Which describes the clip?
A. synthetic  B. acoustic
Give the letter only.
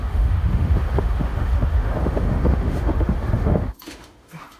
A